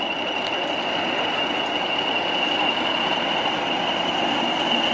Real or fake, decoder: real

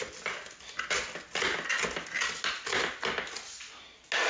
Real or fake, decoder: real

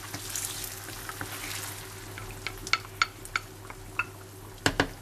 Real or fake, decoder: real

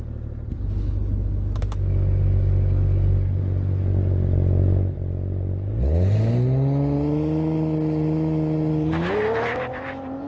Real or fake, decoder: real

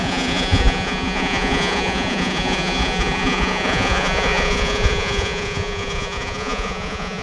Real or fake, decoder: fake, vocoder, Vocos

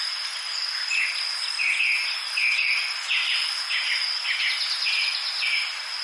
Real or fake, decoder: real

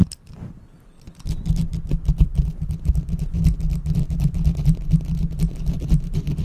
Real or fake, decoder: real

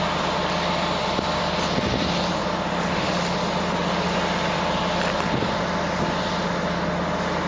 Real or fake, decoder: real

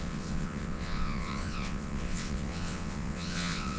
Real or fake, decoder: fake, vocoder, WaveNeXt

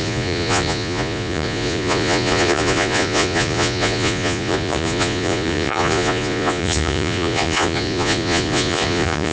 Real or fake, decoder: fake, vocoder, Vocos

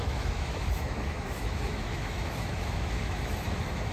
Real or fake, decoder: fake, autoencoder, DAC-VAE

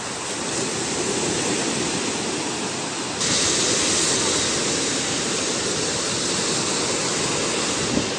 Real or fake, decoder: real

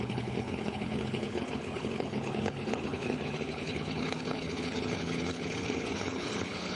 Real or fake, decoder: fake, codec, HILCodec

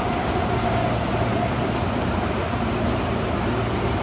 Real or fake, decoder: real